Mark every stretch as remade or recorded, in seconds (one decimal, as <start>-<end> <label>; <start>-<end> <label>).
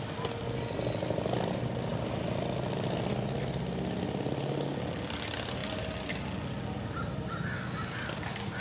0.0-8.6 recorded